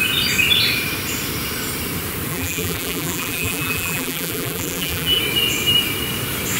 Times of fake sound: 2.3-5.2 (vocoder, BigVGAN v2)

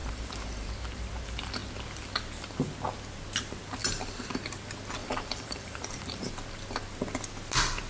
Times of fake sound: 0.0-0.7 (vocoder, BigVGAN v2); 3.8-4.3; 5.0-6.3

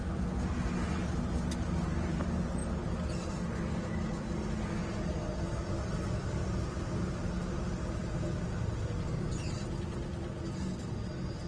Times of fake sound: 5.6-7.2 (vocoder, BigVGAN v2)

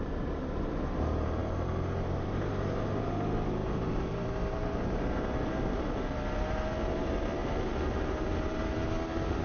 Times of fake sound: 1.4-3.1 (vocoder, BigVGAN v2); 3.6-6.9; 7.4-8.9